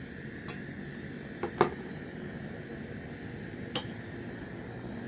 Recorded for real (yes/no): yes